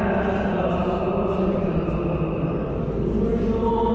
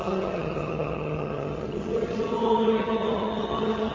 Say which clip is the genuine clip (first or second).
first